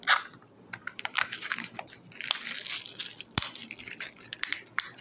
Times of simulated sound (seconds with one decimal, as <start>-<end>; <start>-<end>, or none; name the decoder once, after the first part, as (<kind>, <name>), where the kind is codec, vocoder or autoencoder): 0.4-1.9 (vocoder, BigVGAN v2)